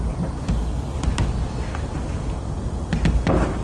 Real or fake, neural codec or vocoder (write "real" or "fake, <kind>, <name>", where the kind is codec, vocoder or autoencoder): real